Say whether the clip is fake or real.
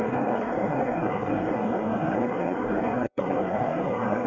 fake